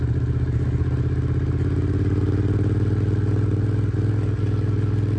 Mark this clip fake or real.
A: real